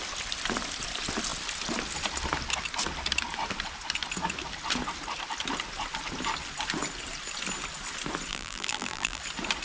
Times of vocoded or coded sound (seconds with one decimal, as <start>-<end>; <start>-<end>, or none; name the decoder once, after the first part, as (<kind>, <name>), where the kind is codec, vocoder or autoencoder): 8.3-9.2 (vocoder, BigVGAN v2)